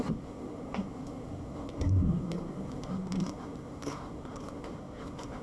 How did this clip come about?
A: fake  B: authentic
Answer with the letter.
A